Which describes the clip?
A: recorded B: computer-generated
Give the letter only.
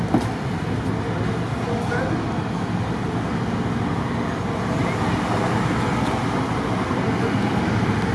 A